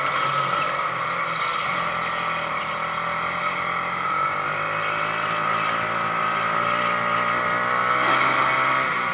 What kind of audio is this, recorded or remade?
recorded